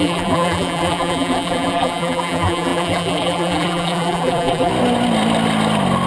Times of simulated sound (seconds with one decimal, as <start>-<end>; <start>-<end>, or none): 0.0-4.7